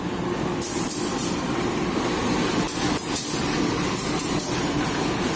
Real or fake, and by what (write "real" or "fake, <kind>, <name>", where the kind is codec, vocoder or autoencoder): real